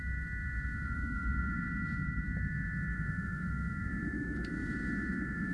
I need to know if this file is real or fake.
fake